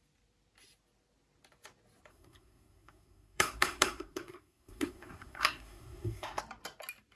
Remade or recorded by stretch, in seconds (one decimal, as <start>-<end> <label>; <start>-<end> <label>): 0.0-2.1 recorded; 2.1-6.4 remade; 6.4-7.2 recorded

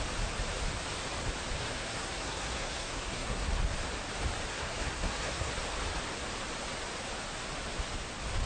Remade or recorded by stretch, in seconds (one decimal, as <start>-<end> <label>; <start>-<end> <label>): 0.0-1.6 recorded; 1.6-3.6 remade; 3.6-4.5 recorded; 4.5-5.5 remade; 5.5-8.5 recorded

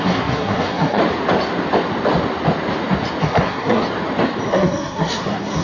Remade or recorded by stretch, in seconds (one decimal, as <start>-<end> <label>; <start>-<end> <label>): 0.0-1.0 remade; 1.0-3.2 recorded; 3.2-3.8 remade; 3.8-4.5 recorded; 4.5-5.6 remade

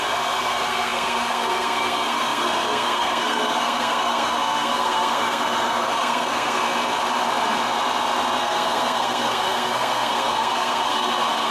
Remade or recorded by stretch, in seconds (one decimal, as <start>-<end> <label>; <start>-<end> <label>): 0.0-6.6 remade; 6.6-8.4 recorded; 8.4-11.5 remade

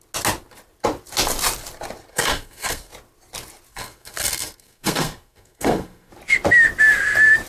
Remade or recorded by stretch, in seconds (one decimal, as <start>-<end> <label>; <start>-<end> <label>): 0.0-2.1 recorded; 2.1-2.9 remade; 2.9-3.7 recorded; 3.7-6.1 remade; 6.1-7.5 recorded

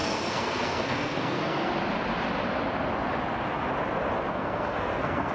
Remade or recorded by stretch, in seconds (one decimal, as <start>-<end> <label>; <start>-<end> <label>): 0.0-1.7 remade; 1.7-4.3 recorded; 4.3-5.3 remade

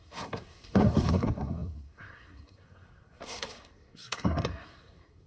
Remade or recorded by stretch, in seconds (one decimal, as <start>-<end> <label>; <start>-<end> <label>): 0.0-5.3 remade